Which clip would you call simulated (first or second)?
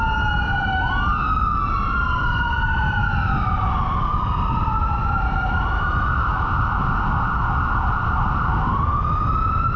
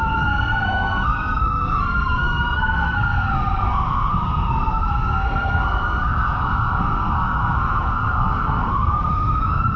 second